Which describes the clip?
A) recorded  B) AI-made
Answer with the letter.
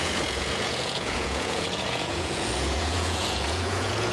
B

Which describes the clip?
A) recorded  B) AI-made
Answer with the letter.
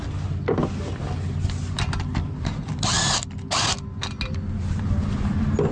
A